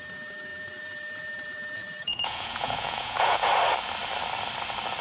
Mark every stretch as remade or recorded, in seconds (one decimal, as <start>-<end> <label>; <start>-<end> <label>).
0.0-0.5 recorded; 0.5-3.5 remade; 3.5-5.0 recorded